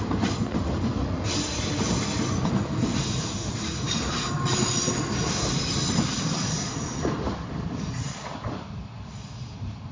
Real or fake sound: real